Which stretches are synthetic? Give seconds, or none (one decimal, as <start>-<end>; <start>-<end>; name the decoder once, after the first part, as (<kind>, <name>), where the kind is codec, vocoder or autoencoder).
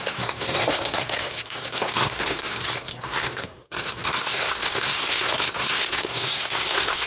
0.0-7.1 (codec, SNAC)